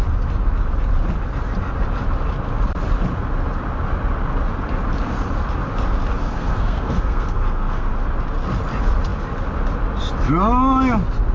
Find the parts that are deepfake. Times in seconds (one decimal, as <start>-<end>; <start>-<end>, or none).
6.2-7.9